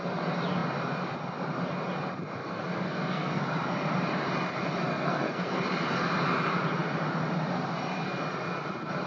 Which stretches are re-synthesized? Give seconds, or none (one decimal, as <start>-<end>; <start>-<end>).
2.4-3.4; 4.9-5.6